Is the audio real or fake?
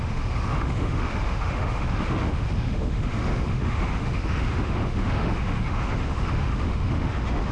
fake